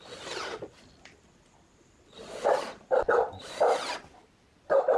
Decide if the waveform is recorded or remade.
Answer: recorded